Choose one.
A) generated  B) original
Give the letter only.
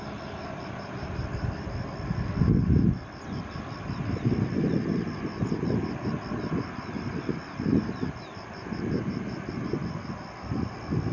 B